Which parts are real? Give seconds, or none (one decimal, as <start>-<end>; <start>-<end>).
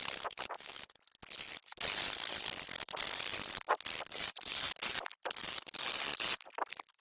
0.0-2.3; 6.5-7.0